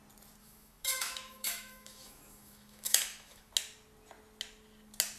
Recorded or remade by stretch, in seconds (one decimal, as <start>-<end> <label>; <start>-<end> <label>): 0.0-0.4 recorded; 0.4-3.5 remade; 3.5-5.2 recorded

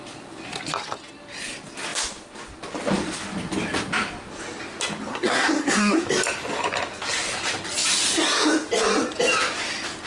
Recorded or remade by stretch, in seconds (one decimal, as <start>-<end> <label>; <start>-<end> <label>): 0.0-5.1 recorded; 5.1-6.0 remade; 6.0-10.1 recorded

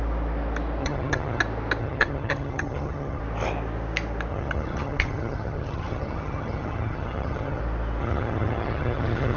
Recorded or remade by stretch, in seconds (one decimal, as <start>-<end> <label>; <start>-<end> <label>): 0.0-0.8 recorded; 0.8-1.4 remade; 1.4-1.8 recorded; 1.8-3.2 remade; 3.2-4.3 recorded; 4.3-7.6 remade; 7.6-8.0 recorded; 8.0-9.4 remade

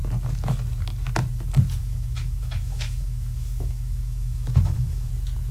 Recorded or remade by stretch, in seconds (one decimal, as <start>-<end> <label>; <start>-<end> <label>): 0.0-1.8 recorded; 1.8-5.1 remade; 5.1-5.5 recorded